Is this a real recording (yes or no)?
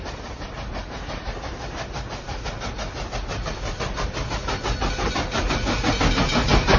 yes